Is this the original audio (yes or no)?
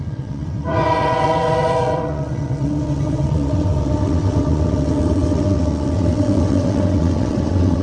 no